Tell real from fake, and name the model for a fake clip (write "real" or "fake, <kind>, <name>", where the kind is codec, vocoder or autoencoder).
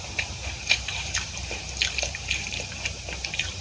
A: fake, vocoder, BigVGAN v2